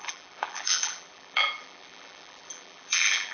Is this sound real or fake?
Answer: fake